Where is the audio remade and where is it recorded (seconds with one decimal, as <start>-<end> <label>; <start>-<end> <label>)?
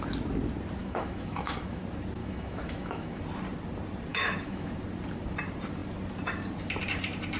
0.0-0.8 recorded; 0.8-1.8 remade; 1.8-2.2 recorded; 2.2-3.2 remade; 3.2-4.1 recorded; 4.1-4.7 remade; 4.7-7.4 recorded